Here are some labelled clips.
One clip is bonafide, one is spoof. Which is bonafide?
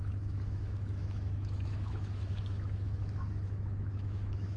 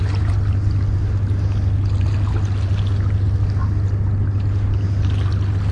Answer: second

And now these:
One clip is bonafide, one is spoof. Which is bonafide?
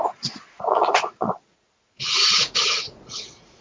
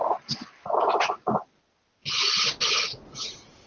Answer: second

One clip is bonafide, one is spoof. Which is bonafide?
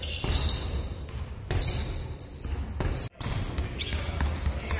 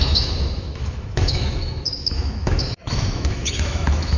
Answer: first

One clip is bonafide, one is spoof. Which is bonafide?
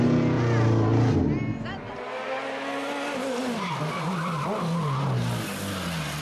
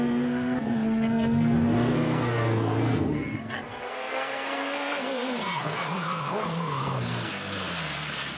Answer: first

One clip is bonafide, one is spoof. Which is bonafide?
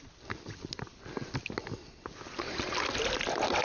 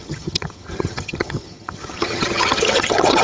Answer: first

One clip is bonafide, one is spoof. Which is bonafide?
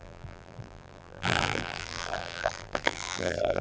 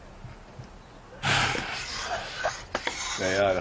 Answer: second